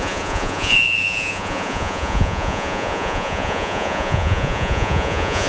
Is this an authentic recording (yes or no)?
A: no